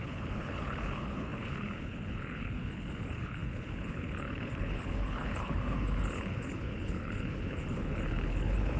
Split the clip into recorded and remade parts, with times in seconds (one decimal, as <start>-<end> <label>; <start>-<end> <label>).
0.0-8.8 remade